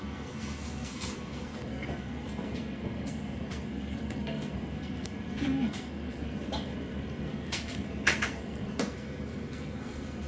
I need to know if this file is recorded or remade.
remade